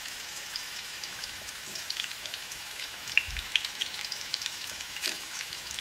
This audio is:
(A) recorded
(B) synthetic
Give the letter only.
B